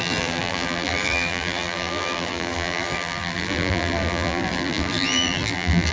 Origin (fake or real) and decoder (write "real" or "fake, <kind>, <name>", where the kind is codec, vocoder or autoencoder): fake, vocoder, BigVGAN v2